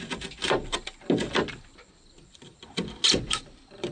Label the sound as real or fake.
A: real